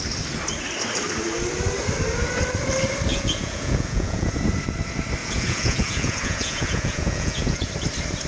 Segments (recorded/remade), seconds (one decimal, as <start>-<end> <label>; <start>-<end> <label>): 0.0-3.1 recorded; 3.1-4.3 remade; 4.3-5.2 recorded; 5.2-7.7 remade; 7.7-8.3 recorded